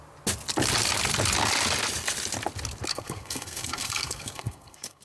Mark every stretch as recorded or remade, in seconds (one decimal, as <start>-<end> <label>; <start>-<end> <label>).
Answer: 0.0-2.9 recorded; 2.9-5.0 remade